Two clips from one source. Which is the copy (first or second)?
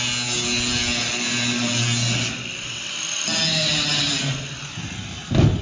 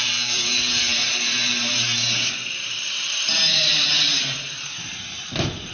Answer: second